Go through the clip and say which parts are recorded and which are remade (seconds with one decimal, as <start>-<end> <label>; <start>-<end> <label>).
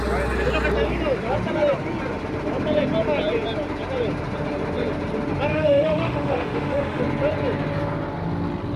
0.0-5.5 recorded; 5.5-7.0 remade; 7.0-8.8 recorded